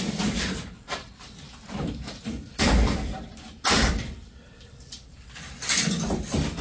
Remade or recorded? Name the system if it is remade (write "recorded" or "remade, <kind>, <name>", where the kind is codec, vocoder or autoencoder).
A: remade, vocoder, BigVGAN v2